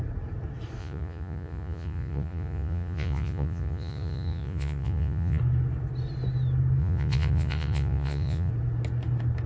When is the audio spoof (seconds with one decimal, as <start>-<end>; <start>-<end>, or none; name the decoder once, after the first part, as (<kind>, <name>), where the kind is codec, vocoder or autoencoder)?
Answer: 0.8-5.4 (vocoder, Vocos); 6.8-8.5